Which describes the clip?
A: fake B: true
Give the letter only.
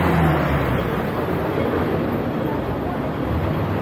B